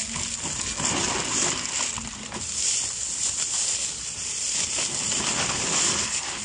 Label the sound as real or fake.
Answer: real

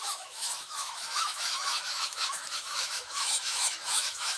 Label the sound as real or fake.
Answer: fake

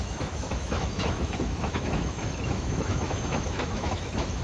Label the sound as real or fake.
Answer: fake